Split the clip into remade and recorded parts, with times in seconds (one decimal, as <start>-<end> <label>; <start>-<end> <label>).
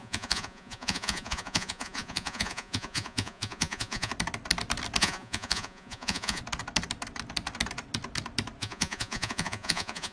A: 0.0-4.1 remade; 4.1-5.0 recorded; 5.0-6.4 remade; 6.4-8.6 recorded; 8.6-10.1 remade